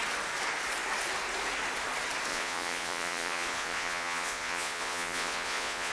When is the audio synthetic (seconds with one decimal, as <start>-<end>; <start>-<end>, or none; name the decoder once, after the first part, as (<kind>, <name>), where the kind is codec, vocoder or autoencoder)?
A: 2.3-5.9 (vocoder, Vocos)